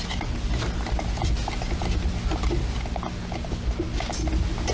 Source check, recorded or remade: recorded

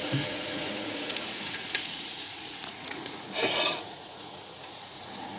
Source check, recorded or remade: remade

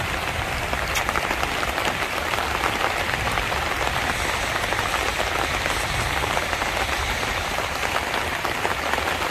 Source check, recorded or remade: remade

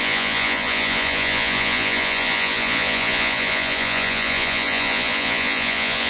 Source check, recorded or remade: remade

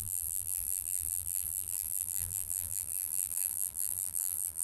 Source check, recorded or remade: remade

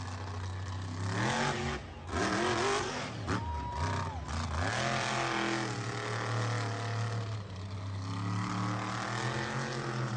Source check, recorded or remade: recorded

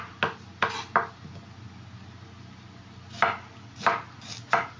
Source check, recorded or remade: recorded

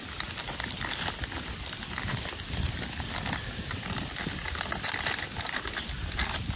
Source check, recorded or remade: remade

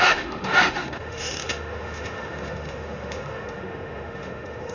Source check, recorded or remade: remade